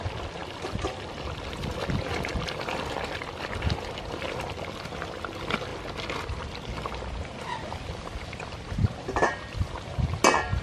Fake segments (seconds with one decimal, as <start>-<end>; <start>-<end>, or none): none